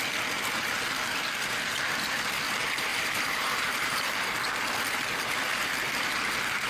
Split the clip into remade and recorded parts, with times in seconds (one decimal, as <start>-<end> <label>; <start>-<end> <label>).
0.0-2.9 recorded; 2.9-4.0 remade; 4.0-6.7 recorded